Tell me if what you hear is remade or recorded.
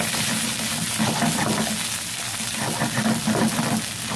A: recorded